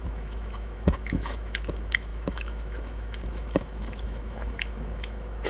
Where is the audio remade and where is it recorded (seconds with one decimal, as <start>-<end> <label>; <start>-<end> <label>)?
0.0-5.5 remade

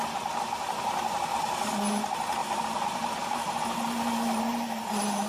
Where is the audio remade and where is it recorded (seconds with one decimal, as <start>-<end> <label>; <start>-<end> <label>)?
0.0-1.3 recorded; 1.3-1.8 remade; 1.8-2.4 recorded; 2.4-5.3 remade

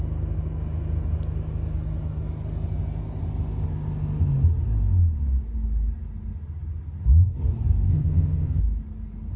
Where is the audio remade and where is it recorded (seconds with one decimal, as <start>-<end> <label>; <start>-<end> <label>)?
0.0-7.9 recorded; 7.9-8.6 remade; 8.6-9.4 recorded

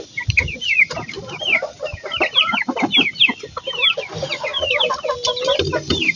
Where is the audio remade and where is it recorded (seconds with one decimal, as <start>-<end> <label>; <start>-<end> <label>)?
0.0-6.2 recorded

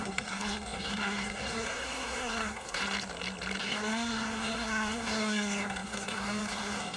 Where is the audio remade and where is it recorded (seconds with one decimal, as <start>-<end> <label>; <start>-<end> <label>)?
0.0-2.8 remade; 2.8-3.6 recorded; 3.6-7.0 remade

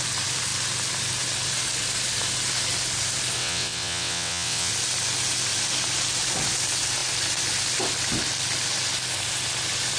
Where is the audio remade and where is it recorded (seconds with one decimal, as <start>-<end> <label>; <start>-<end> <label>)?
0.0-3.4 recorded; 3.4-4.7 remade; 4.7-10.0 recorded

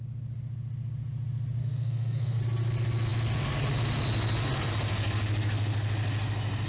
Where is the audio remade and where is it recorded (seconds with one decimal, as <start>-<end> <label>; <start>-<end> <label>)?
0.0-1.6 recorded; 1.6-2.4 remade; 2.4-6.7 recorded

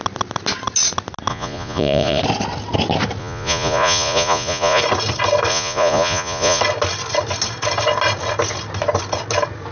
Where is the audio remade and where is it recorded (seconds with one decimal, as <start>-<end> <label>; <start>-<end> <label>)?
0.0-1.3 recorded; 1.3-2.2 remade; 2.2-3.2 recorded; 3.2-4.8 remade; 4.8-5.5 recorded; 5.5-6.6 remade; 6.6-9.7 recorded